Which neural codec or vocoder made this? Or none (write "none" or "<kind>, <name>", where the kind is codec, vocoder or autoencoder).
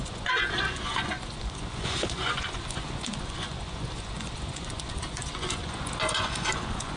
vocoder, Vocos